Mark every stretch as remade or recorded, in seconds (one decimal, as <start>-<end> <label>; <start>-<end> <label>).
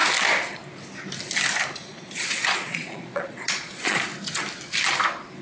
0.0-1.8 recorded; 1.8-4.0 remade; 4.0-5.4 recorded